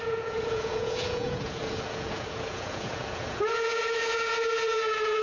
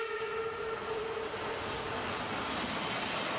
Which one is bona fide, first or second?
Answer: second